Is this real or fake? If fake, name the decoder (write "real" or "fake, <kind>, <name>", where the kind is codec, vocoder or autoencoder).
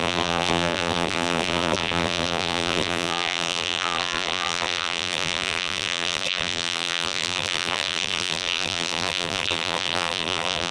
fake, vocoder, BigVGAN v2